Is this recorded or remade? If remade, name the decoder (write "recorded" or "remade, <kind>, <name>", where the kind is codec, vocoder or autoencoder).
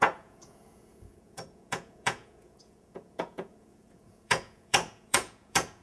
remade, vocoder, Vocos